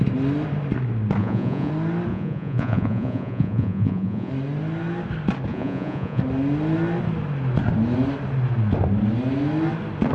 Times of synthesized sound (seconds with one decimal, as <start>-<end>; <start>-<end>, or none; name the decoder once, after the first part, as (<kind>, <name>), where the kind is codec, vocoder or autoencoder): 1.2-1.7 (vocoder, Vocos); 2.1-4.3; 5.5-6.2